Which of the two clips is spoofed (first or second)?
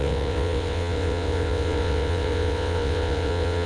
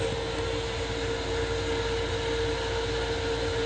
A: first